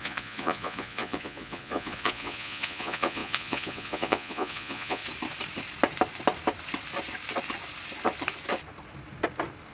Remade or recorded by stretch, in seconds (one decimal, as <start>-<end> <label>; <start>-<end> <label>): 0.0-5.0 remade; 5.0-9.7 recorded